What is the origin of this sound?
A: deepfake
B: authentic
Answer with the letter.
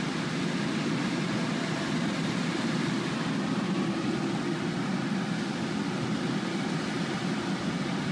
B